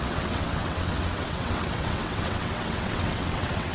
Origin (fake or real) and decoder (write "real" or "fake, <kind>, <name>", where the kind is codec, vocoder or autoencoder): fake, vocoder, WaveNeXt